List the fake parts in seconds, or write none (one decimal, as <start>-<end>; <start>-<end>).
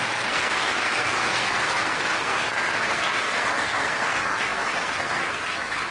0.0-5.9